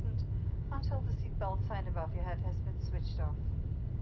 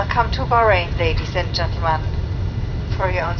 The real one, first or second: first